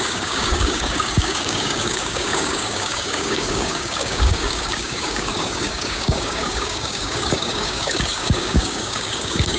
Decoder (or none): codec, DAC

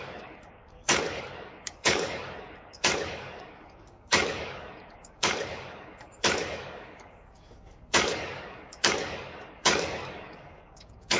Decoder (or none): codec, DAC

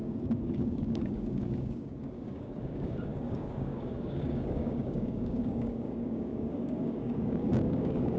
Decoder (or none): codec, DAC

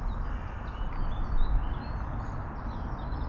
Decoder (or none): none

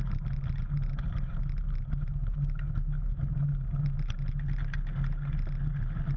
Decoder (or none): none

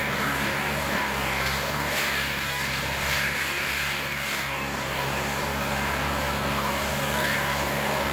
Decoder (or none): codec, DAC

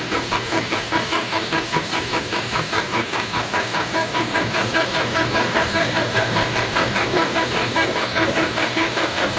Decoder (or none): codec, DAC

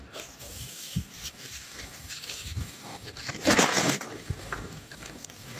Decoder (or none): codec, DAC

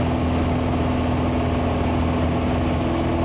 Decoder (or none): none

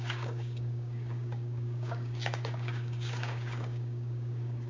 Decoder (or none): codec, DAC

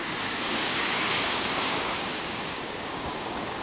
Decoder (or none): codec, DAC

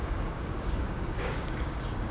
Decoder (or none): codec, DAC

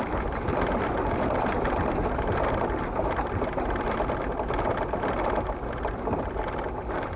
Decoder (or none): none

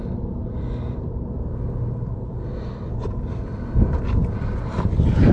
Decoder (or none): none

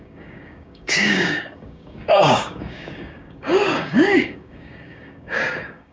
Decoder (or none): codec, DAC